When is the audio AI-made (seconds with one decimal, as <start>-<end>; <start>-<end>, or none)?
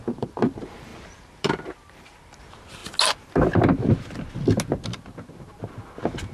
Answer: 0.0-2.8